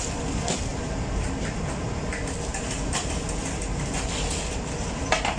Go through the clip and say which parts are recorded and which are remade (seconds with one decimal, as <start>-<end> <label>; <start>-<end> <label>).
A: 0.0-2.5 recorded; 2.5-3.3 remade; 3.3-5.4 recorded

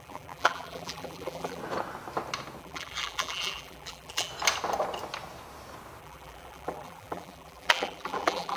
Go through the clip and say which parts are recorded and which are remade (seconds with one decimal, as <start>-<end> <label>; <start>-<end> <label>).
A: 0.0-1.6 remade; 1.6-2.6 recorded; 2.6-4.3 remade; 4.3-6.0 recorded; 6.0-8.6 remade

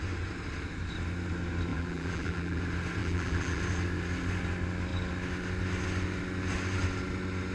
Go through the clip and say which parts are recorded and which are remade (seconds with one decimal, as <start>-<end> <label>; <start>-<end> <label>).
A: 0.0-1.7 recorded; 1.7-2.6 remade; 2.6-3.0 recorded; 3.0-3.6 remade; 3.6-7.5 recorded